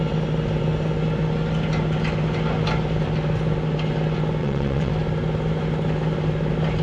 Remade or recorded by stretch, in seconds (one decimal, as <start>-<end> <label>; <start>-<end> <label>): 0.0-4.4 recorded; 4.4-4.9 remade; 4.9-6.8 recorded